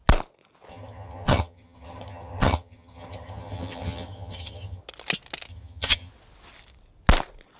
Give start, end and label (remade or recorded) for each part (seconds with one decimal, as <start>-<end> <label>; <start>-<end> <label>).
0.0-0.7 recorded; 0.7-4.8 remade; 4.8-5.5 recorded; 5.5-6.1 remade; 6.1-7.6 recorded